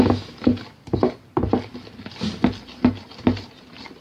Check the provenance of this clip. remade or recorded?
recorded